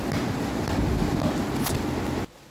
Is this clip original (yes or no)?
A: yes